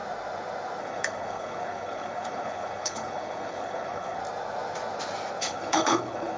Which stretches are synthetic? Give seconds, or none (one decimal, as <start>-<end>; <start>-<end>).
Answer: 0.8-4.2; 5.4-6.4